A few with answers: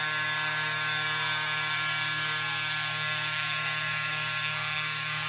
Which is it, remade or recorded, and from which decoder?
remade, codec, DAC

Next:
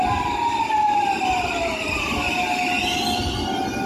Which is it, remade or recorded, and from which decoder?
recorded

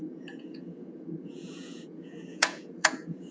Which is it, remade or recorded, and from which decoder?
remade, vocoder, Vocos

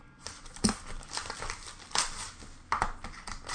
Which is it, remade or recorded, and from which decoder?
recorded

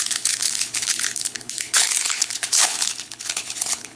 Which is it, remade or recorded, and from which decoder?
remade, codec, HILCodec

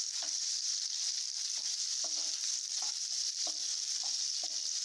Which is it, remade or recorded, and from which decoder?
remade, vocoder, BigVGAN v2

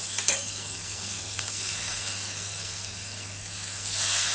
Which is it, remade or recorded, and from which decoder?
remade, codec, SNAC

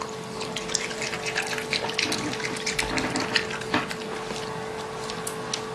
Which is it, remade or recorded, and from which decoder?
recorded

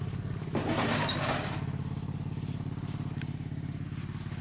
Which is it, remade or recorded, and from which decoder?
recorded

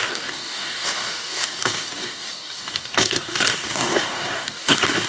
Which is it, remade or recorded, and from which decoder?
remade, codec, DAC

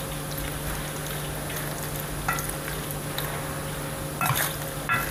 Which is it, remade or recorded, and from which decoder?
recorded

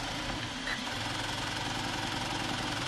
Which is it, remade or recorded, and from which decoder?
recorded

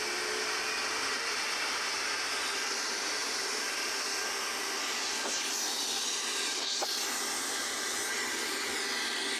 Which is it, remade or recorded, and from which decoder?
recorded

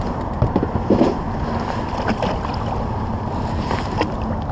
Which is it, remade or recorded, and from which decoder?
recorded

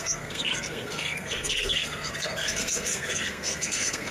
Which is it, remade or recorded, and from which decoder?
remade, codec, SNAC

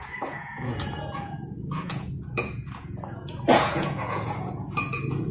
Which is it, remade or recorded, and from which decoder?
remade, vocoder, Vocos